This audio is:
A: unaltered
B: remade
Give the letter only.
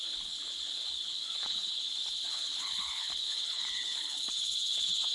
B